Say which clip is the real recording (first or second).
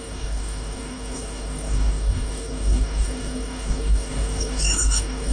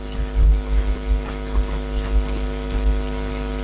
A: second